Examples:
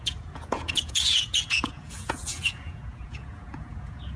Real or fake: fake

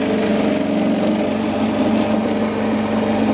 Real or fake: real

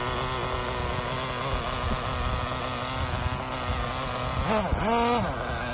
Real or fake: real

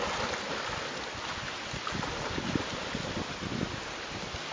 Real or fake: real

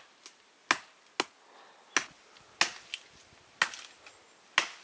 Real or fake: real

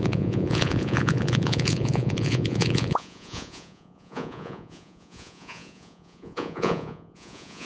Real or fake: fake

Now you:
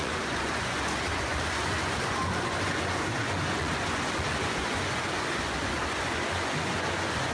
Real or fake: fake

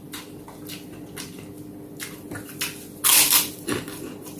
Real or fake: real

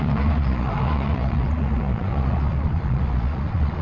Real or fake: fake